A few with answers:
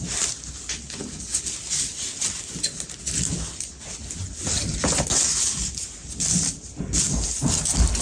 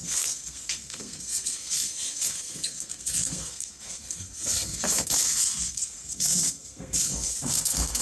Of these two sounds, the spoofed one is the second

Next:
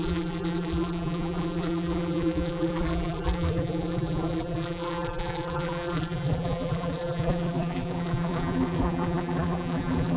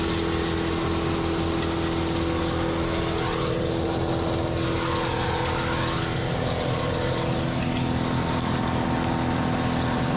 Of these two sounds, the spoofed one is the first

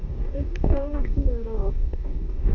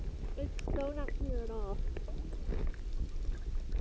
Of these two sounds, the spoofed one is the first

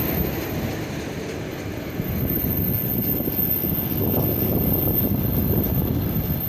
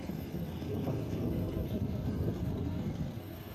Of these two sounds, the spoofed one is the second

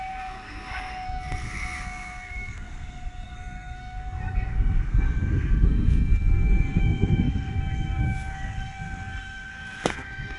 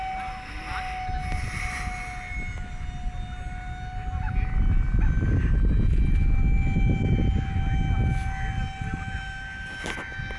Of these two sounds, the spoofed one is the first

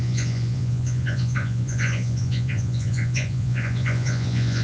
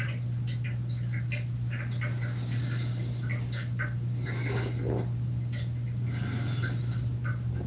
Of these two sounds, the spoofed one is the first